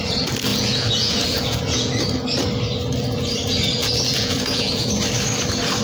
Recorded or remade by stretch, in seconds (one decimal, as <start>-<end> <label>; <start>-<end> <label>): 0.0-0.5 recorded; 0.5-1.9 remade; 1.9-3.8 recorded; 3.8-4.9 remade; 4.9-5.8 recorded